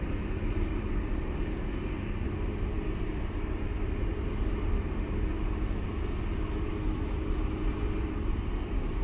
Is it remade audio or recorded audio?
recorded